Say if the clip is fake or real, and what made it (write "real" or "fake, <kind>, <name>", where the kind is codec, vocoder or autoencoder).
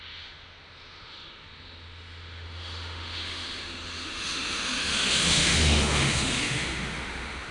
fake, autoencoder, DAC-VAE